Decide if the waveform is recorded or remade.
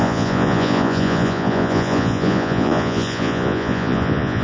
remade